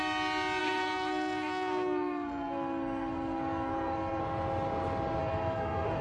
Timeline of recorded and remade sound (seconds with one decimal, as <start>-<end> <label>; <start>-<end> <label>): 0.0-0.6 recorded; 0.6-4.2 remade; 4.2-5.2 recorded; 5.2-6.0 remade